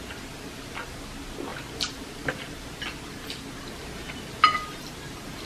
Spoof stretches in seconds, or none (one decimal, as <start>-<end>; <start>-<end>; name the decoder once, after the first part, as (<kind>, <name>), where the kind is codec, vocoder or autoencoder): none